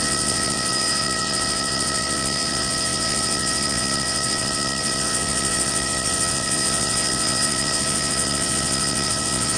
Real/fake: fake